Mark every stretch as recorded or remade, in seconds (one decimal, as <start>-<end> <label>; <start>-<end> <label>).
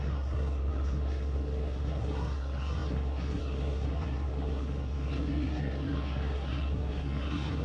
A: 0.0-7.6 remade